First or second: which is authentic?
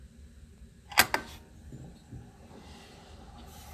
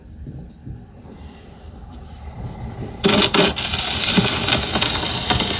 first